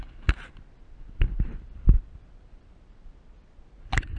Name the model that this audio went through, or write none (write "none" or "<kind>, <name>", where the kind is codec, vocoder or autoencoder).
none